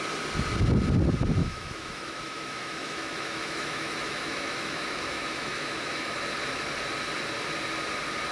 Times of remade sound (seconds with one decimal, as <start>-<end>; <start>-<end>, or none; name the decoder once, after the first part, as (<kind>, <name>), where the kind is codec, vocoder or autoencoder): 1.4-6.2 (autoencoder, DAC-VAE)